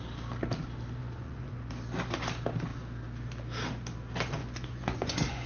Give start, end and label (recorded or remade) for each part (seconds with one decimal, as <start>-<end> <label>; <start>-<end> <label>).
0.0-1.0 recorded; 1.0-1.7 remade; 1.7-4.4 recorded; 4.4-5.5 remade